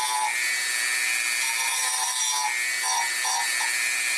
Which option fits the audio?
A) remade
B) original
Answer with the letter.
B